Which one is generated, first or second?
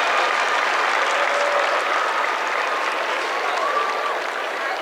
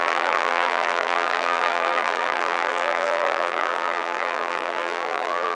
second